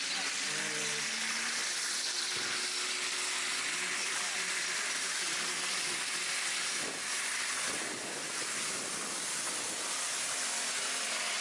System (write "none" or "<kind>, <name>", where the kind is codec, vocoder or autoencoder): none